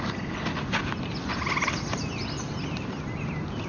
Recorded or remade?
recorded